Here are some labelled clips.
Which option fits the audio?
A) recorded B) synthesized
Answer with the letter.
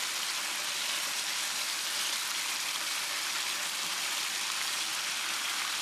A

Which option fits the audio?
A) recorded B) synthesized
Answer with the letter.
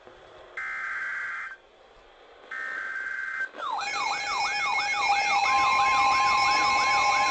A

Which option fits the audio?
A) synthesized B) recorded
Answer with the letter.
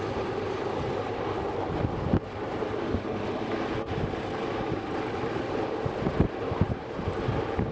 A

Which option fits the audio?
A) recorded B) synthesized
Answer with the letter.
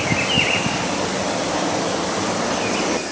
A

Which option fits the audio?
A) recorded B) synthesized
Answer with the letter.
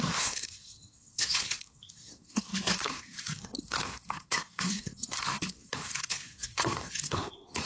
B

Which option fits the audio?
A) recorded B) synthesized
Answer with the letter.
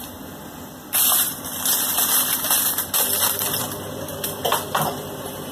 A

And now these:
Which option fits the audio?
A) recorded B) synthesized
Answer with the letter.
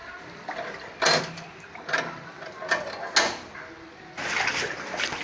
A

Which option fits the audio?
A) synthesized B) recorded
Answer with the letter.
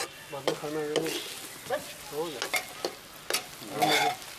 B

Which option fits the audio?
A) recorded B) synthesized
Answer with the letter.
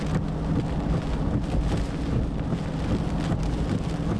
A